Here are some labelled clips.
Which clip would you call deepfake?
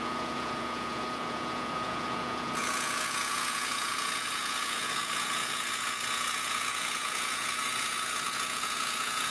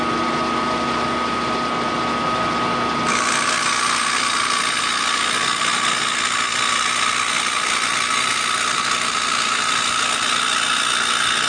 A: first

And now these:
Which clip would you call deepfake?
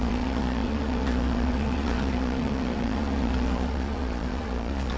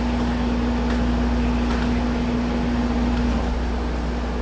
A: first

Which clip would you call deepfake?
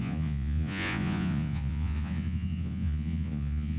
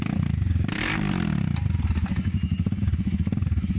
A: first